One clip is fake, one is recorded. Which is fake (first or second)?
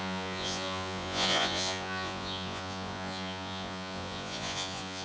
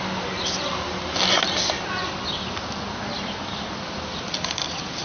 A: first